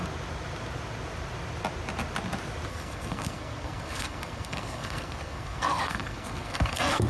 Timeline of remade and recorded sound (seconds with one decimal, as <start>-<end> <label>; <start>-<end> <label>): 0.0-2.7 recorded; 2.7-7.1 remade